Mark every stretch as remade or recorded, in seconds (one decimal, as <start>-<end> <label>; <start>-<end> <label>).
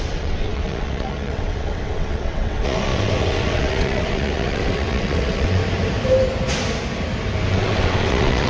0.0-5.6 remade; 5.6-7.5 recorded; 7.5-8.5 remade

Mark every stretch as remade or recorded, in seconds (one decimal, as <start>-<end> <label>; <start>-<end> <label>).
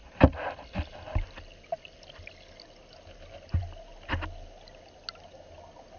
0.0-6.0 recorded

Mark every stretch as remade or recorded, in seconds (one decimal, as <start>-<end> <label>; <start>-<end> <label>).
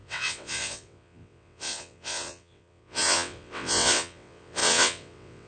0.0-5.5 remade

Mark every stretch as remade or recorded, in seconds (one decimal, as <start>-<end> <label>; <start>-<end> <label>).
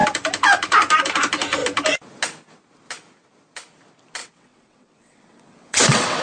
0.0-4.2 recorded; 4.2-6.2 remade